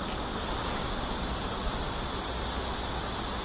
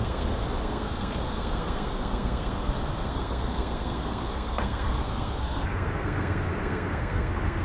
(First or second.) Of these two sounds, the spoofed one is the second